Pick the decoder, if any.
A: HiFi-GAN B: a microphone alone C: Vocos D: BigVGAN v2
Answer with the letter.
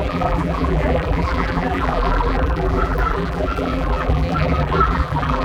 D